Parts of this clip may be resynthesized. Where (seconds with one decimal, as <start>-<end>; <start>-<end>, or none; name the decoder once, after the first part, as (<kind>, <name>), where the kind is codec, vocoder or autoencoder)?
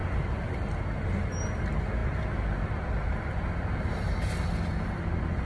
none